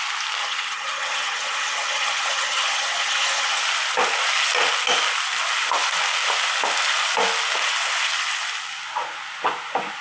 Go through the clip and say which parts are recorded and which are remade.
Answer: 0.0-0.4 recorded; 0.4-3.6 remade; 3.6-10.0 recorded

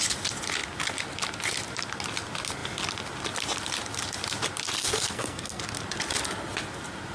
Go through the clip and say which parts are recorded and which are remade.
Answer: 0.0-4.8 recorded; 4.8-5.6 remade; 5.6-7.1 recorded

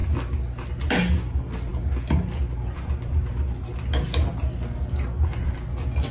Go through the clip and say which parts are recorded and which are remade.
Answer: 0.0-6.1 recorded

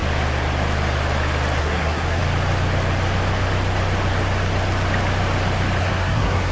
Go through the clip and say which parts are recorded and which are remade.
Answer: 0.0-1.6 recorded; 1.6-2.2 remade; 2.2-5.8 recorded; 5.8-6.5 remade

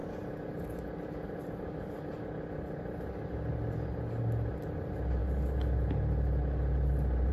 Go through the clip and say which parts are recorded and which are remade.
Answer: 0.0-7.3 recorded